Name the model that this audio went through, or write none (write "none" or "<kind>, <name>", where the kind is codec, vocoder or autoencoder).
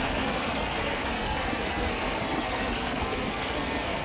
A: codec, SNAC